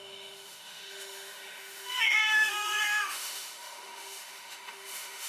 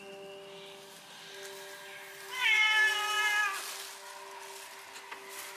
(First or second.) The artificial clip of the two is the first